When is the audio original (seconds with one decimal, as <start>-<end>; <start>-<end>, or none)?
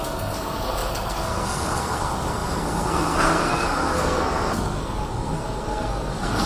none